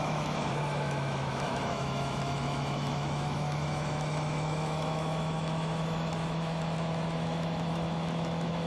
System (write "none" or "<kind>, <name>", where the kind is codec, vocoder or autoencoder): autoencoder, DAC-VAE